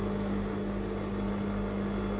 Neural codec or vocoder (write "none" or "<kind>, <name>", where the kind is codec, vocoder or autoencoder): none